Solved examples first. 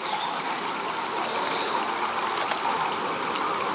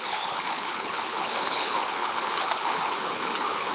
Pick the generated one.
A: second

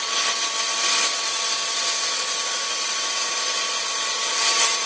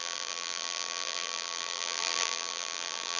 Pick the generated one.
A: second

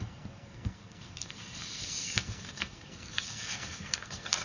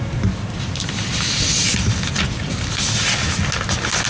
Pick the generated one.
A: first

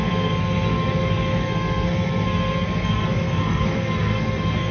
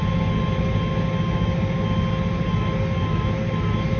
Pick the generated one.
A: first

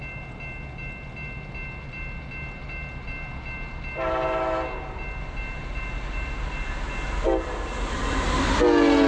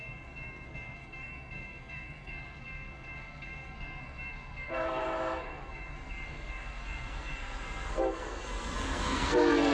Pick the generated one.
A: second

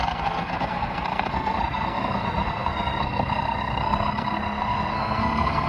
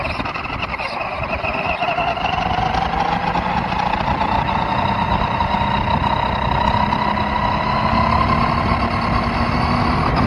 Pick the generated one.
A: first